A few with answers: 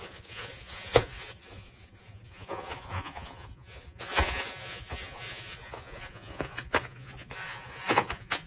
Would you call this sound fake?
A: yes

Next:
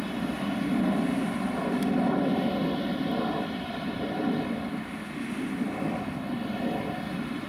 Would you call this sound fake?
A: no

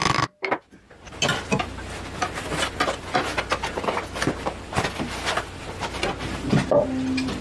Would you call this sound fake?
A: no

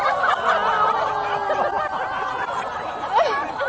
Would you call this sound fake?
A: no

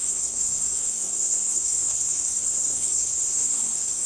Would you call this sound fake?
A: yes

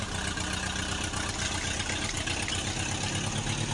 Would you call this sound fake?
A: no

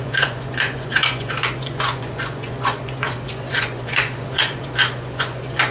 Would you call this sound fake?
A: yes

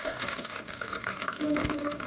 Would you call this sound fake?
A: yes